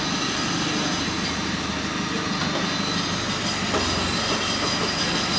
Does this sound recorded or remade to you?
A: recorded